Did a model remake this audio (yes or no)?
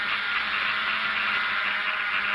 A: no